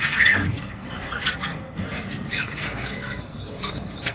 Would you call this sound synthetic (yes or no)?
yes